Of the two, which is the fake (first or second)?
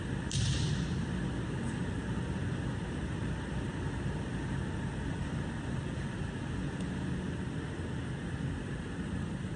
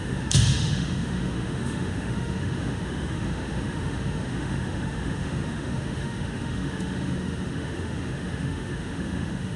second